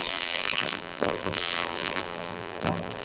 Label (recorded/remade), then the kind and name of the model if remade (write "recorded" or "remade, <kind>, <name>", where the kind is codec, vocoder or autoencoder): remade, vocoder, BigVGAN v2